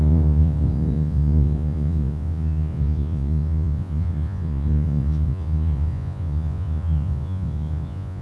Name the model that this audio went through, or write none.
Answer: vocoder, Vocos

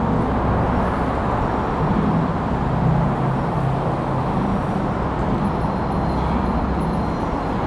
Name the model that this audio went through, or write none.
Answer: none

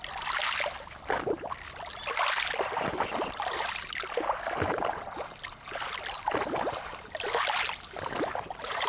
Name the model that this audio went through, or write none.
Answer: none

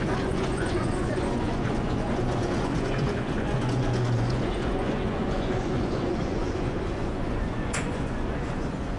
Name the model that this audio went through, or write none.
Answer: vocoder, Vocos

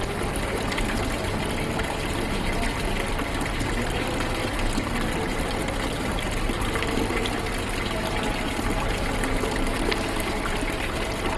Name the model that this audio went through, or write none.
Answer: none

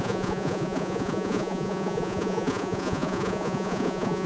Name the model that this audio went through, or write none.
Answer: vocoder, Vocos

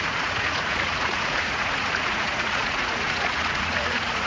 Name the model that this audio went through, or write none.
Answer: vocoder, Vocos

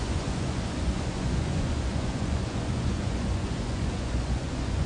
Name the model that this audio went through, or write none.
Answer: vocoder, Vocos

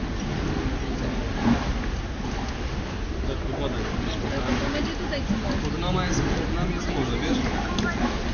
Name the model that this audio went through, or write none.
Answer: none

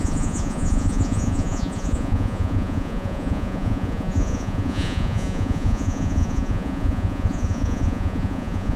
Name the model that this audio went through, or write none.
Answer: vocoder, Vocos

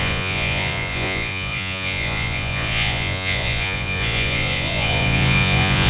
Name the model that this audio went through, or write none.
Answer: vocoder, Vocos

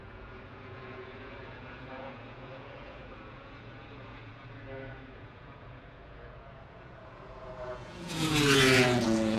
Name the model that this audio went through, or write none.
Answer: vocoder, Vocos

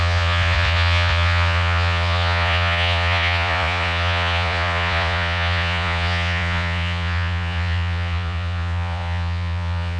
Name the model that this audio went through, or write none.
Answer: vocoder, Vocos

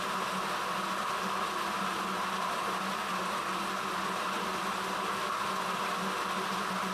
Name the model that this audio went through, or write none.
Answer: none